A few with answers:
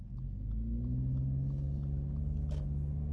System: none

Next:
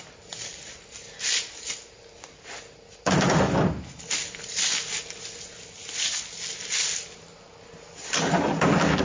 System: none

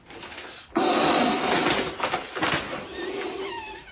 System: none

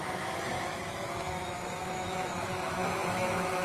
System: autoencoder, DAC-VAE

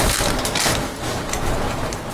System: none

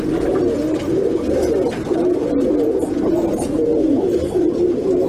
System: none